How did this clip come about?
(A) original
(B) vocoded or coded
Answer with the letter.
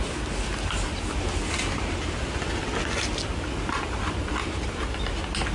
A